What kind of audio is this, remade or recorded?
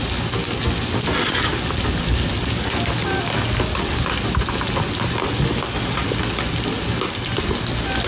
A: recorded